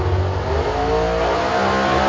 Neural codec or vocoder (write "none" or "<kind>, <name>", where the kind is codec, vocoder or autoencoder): none